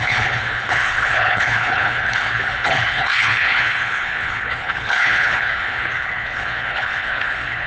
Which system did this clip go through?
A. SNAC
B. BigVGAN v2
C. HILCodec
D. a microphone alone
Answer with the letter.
C